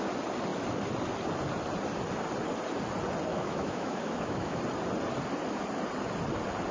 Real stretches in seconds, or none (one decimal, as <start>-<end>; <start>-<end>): 0.0-3.3; 4.6-6.7